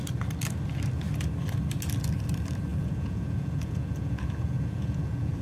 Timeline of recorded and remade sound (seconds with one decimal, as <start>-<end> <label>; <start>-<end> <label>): 0.0-2.7 recorded; 2.7-5.4 remade